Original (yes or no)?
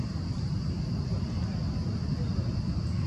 yes